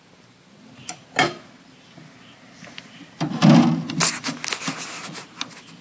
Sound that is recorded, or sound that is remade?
recorded